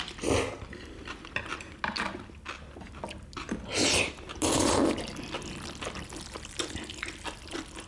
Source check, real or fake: real